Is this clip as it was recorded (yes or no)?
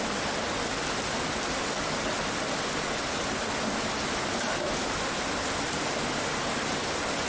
yes